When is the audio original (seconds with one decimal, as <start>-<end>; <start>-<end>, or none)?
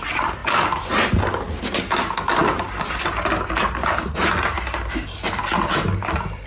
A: 0.0-6.5